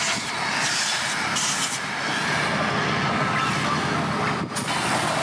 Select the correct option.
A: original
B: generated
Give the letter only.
A